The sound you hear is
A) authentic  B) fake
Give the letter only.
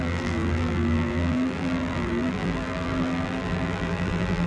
B